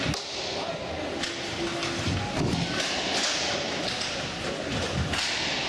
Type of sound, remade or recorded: recorded